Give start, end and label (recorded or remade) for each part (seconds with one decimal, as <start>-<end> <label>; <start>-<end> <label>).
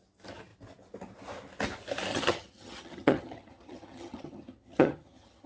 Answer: 0.0-2.1 recorded; 2.1-5.5 remade